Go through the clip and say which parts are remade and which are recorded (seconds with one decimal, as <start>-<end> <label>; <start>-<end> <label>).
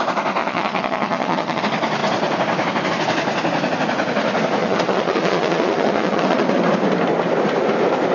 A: 0.0-0.4 recorded; 0.4-1.6 remade; 1.6-4.6 recorded; 4.6-6.6 remade; 6.6-8.1 recorded